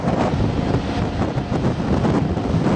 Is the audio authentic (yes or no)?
yes